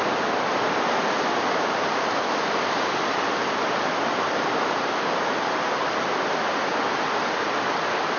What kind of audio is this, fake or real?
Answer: real